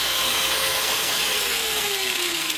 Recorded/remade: remade